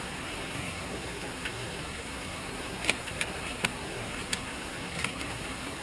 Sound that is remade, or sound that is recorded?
remade